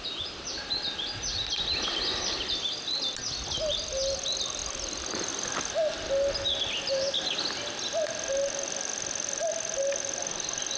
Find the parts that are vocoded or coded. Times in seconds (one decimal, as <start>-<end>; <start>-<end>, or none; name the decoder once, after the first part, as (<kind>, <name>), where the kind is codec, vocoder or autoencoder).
none